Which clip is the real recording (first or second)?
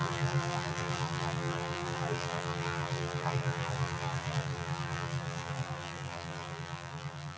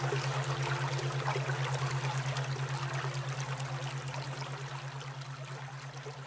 second